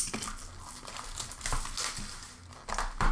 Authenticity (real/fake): real